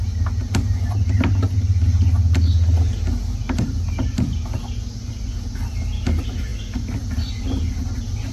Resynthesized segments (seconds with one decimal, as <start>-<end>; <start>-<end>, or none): none

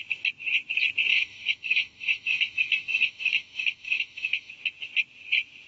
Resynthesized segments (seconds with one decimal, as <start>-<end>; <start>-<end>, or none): 1.1-4.5

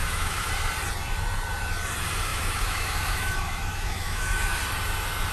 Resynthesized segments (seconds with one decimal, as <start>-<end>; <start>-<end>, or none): 0.0-0.5; 2.3-4.6

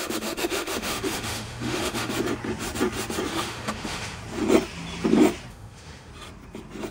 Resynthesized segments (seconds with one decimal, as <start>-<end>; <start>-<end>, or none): 0.0-2.1; 3.3-4.2; 5.5-6.1

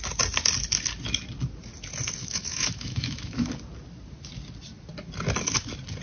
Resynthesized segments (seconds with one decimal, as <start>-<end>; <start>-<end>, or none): 2.2-3.5